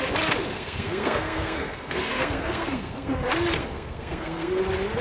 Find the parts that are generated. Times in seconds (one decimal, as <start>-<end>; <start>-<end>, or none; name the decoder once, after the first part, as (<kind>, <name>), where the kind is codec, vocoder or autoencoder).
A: 0.5-3.1 (codec, SNAC); 3.6-4.6

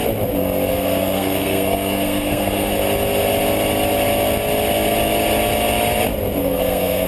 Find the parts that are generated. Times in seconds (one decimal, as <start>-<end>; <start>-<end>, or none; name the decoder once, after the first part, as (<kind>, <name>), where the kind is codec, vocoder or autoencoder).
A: 0.7-2.7 (codec, SNAC); 6.4-7.1

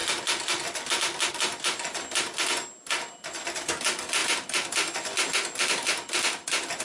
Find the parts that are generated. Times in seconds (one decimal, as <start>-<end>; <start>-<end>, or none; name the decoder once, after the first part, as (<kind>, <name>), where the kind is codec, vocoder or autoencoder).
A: none

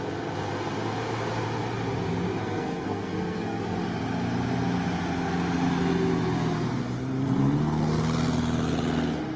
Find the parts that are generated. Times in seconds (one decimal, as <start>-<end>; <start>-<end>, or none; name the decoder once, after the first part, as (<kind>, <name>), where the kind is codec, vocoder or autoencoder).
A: 2.4-3.6 (codec, SNAC)

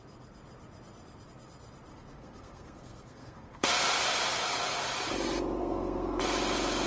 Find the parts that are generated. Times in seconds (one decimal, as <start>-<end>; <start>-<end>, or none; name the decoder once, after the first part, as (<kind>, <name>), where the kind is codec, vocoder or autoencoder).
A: 1.9-3.7 (codec, SNAC); 5.6-6.2

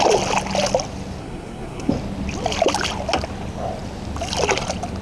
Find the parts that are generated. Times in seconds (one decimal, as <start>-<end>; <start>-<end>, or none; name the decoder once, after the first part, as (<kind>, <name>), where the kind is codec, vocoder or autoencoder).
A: 1.2-1.9 (codec, SNAC)

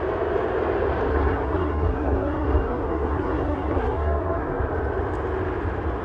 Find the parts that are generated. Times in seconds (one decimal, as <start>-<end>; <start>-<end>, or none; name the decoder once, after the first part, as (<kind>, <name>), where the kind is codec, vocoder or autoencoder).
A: 1.1-4.7 (codec, SNAC)

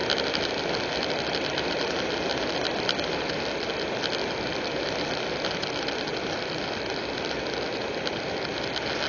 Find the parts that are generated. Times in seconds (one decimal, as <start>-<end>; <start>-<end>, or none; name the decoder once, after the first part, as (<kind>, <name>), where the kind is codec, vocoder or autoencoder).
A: none